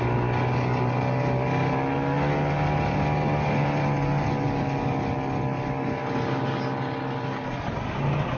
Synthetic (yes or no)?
no